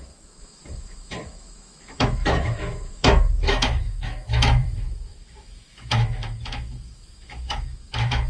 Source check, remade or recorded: remade